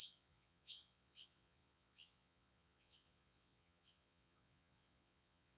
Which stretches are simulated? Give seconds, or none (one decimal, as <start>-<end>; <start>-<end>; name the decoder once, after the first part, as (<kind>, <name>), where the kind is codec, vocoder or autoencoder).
0.0-5.6 (vocoder, Vocos)

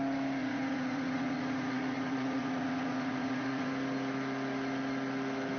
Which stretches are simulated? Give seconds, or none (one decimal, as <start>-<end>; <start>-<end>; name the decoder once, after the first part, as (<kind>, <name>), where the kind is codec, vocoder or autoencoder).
0.4-3.7 (vocoder, Vocos)

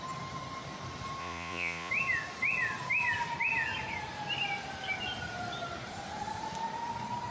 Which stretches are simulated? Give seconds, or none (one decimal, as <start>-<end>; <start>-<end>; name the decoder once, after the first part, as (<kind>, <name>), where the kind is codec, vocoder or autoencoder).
1.2-1.9 (vocoder, Vocos)